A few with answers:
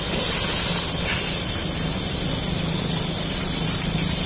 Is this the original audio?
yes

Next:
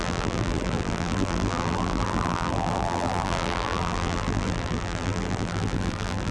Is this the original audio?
no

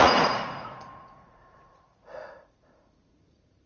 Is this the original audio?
no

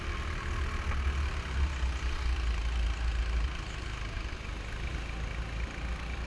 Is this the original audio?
yes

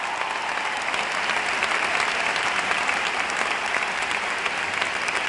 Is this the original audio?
yes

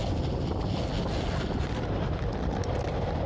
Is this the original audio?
yes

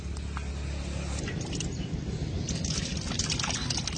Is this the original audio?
yes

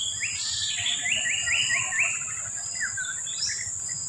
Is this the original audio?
yes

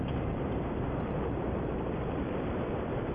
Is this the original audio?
no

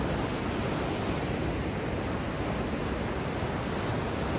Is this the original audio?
yes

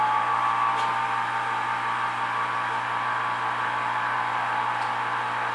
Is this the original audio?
no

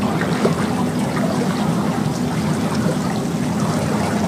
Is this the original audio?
yes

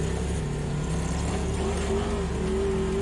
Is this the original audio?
yes